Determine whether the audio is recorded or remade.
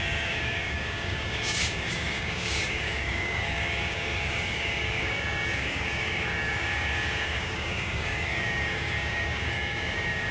remade